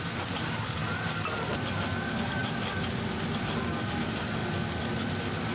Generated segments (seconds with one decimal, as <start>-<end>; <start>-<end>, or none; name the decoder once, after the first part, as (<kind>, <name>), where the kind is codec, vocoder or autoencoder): none